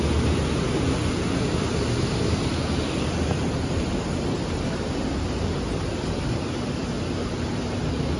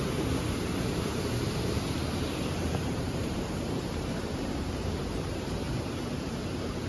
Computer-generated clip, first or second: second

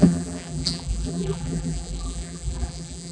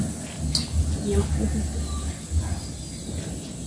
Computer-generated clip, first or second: first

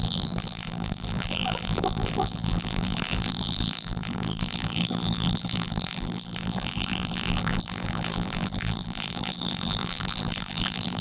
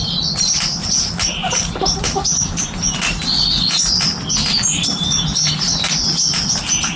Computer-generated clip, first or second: first